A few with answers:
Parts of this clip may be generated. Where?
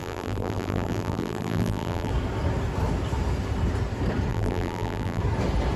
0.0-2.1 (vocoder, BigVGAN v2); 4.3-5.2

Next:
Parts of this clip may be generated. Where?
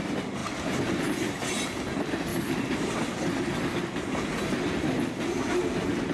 0.4-1.5 (vocoder, BigVGAN v2); 2.3-3.6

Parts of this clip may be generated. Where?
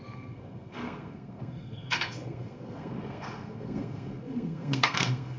0.0-5.4 (codec, SNAC)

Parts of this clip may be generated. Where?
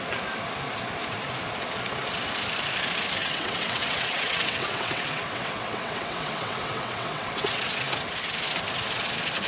3.2-7.6 (vocoder, WaveNeXt)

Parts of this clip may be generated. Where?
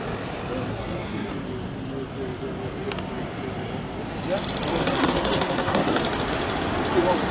0.7-1.3 (codec, SNAC); 4.8-6.0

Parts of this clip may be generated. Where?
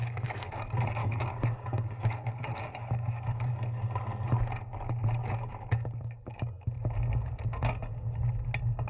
0.0-0.5 (codec, DAC); 1.0-3.5; 5.2-6.5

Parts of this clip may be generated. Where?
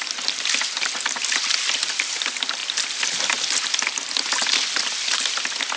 none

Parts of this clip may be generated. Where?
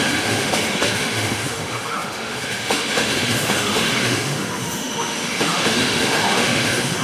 0.0-7.0 (autoencoder, DAC-VAE)